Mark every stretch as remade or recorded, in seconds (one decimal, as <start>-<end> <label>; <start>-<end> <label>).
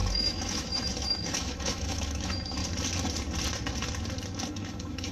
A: 0.0-2.6 remade; 2.6-4.5 recorded; 4.5-5.1 remade